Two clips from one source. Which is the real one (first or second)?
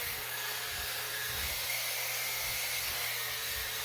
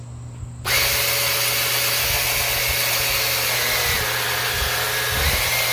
second